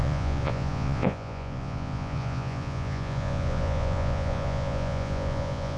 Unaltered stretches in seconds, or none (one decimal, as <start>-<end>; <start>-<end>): none